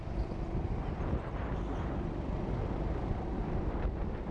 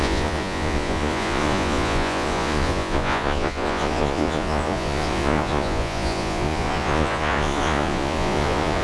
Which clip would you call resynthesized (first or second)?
second